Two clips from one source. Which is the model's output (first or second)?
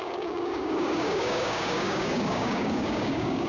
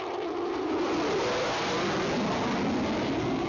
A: first